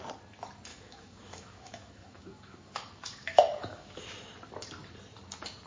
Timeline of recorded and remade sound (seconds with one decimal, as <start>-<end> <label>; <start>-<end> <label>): 0.0-0.7 recorded; 0.7-4.0 remade; 4.0-5.7 recorded